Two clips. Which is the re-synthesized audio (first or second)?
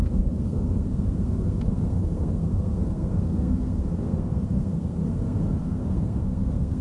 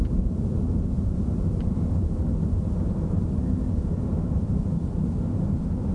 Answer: first